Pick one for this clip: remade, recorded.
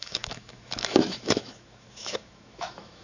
remade